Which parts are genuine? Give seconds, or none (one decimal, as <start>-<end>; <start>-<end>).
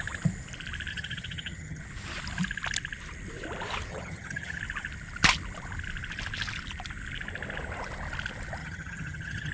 0.0-0.9; 1.8-3.9; 4.6-8.6